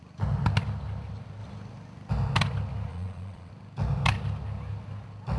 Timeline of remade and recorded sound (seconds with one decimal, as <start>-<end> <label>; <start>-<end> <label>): 0.0-2.9 recorded; 2.9-3.5 remade; 3.5-5.4 recorded